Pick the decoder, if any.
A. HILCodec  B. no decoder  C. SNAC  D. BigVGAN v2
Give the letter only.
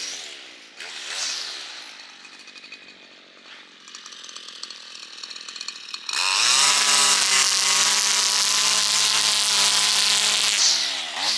B